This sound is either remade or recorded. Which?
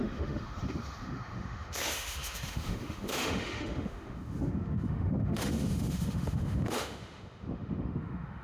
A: remade